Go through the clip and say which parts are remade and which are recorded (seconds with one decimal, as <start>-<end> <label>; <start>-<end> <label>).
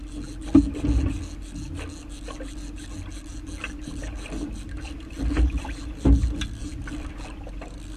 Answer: 0.0-8.0 recorded